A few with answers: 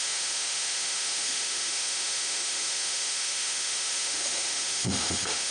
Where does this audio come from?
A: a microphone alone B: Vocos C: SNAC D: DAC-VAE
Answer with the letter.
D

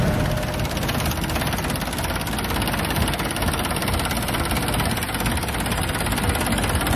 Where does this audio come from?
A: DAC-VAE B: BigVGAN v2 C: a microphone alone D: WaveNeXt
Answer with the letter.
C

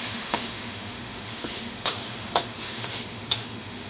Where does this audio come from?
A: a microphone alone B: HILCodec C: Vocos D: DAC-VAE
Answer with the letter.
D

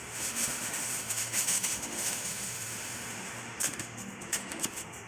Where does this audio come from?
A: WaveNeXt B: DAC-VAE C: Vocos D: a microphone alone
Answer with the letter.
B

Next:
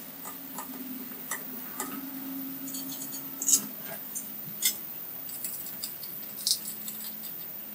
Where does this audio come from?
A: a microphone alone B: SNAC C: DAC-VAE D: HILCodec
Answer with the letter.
A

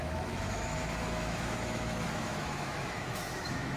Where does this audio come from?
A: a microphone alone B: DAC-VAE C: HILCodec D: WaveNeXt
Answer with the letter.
B